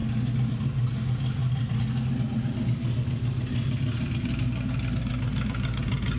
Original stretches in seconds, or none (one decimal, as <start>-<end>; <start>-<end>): 0.0-6.2